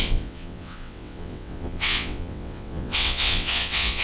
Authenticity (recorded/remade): remade